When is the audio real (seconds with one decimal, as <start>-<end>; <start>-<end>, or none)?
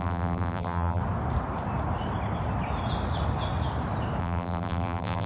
1.0-4.2